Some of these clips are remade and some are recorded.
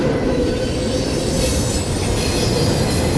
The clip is recorded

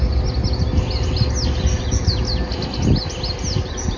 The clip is recorded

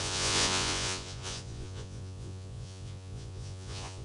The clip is remade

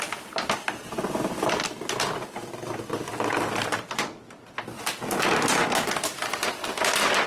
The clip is recorded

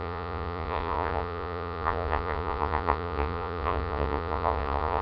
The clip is remade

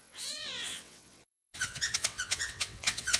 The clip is remade